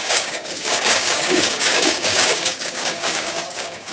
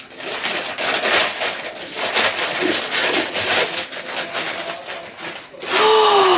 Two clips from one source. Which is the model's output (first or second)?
first